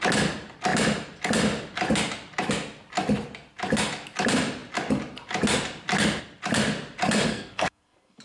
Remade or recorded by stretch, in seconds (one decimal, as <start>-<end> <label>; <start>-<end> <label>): 0.0-7.3 recorded; 7.3-8.2 remade